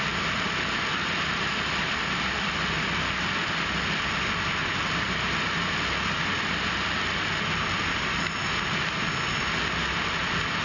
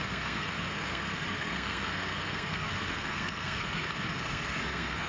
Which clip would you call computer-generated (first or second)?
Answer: second